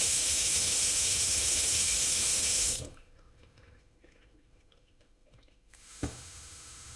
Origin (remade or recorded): remade